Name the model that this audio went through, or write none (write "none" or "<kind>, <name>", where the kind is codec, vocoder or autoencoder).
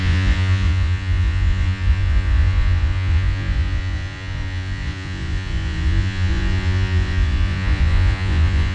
vocoder, Vocos